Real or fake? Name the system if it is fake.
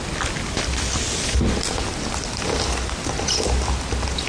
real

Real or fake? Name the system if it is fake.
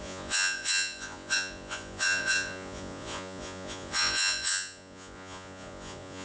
fake, vocoder, Vocos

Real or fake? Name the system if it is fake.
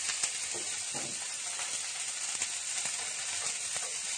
real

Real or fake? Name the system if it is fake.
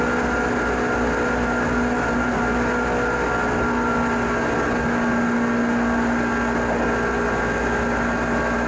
real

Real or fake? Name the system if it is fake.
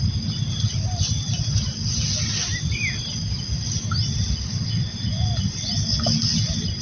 real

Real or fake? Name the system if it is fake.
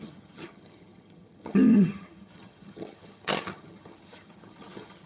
fake, vocoder, HiFi-GAN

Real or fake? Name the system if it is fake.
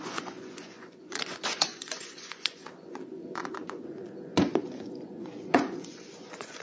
fake, vocoder, Vocos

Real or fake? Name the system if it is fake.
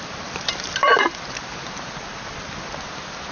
fake, vocoder, BigVGAN v2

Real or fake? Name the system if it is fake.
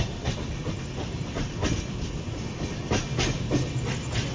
real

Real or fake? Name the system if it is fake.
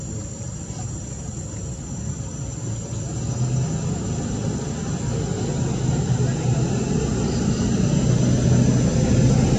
real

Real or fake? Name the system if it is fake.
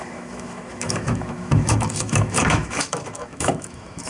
fake, autoencoder, DAC-VAE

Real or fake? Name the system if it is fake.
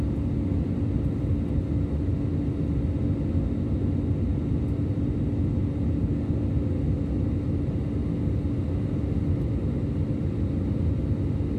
real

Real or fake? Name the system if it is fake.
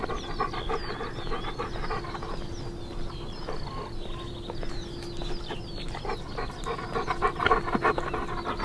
real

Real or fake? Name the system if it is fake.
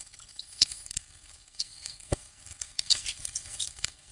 fake, codec, SNAC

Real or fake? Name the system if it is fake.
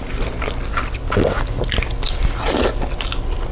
real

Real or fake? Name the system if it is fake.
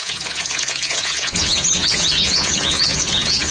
fake, vocoder, Vocos